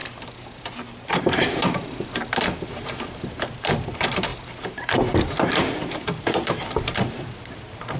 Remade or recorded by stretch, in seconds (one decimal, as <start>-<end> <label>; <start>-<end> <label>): 0.0-8.0 remade

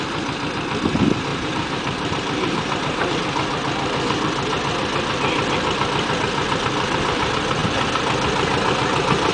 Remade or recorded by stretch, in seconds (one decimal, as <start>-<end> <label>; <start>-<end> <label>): 0.0-1.3 recorded; 1.3-3.1 remade; 3.1-9.3 recorded

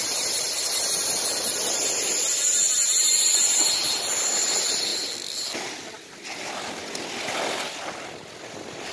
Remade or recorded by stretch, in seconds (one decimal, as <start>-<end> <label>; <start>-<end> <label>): 0.0-6.8 remade; 6.8-8.5 recorded; 8.5-8.9 remade